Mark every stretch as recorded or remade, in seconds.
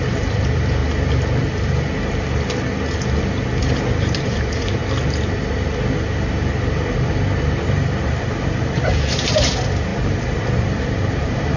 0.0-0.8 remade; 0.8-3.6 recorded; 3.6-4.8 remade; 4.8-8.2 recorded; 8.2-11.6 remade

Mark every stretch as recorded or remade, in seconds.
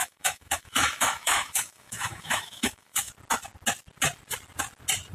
0.0-3.1 remade; 3.1-5.1 recorded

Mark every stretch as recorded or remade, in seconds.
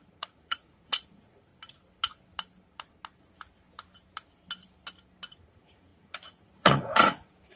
0.0-1.5 remade; 1.5-5.4 recorded; 5.4-7.6 remade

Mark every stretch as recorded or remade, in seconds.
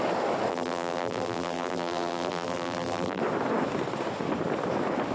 0.0-0.5 recorded; 0.5-3.2 remade; 3.2-5.1 recorded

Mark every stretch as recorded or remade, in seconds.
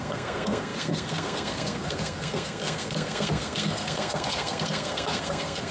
0.0-5.7 remade